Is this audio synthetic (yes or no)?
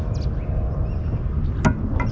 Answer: no